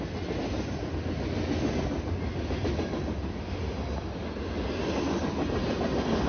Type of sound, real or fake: real